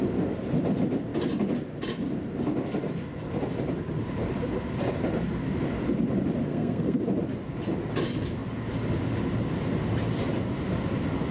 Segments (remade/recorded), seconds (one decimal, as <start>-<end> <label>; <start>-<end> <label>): 0.0-6.5 recorded; 6.5-7.0 remade; 7.0-11.3 recorded